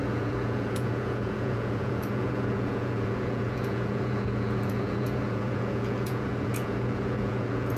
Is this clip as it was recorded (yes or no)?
no